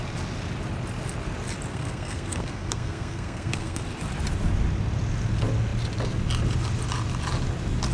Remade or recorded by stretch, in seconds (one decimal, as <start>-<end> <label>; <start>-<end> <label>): 0.0-1.7 recorded; 1.7-3.8 remade; 3.8-7.9 recorded

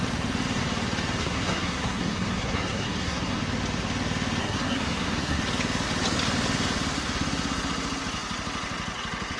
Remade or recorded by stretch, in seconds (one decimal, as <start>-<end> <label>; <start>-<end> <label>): 0.0-1.2 recorded; 1.2-3.4 remade; 3.4-4.4 recorded; 4.4-5.4 remade; 5.4-9.4 recorded

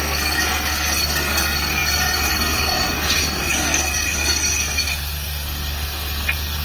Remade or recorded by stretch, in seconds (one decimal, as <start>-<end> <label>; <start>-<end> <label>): 0.0-6.6 remade

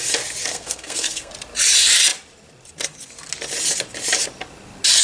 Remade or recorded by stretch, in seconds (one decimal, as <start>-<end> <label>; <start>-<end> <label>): 0.0-0.5 recorded; 0.5-1.3 remade; 1.3-5.0 recorded

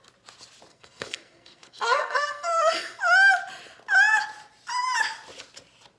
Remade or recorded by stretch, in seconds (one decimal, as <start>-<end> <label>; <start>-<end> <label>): 0.0-0.7 recorded; 0.7-3.0 remade; 3.0-6.0 recorded